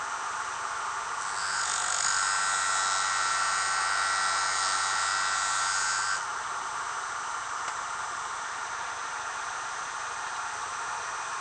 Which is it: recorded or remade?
recorded